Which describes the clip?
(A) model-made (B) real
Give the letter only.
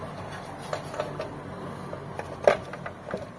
B